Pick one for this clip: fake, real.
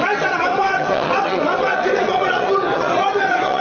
fake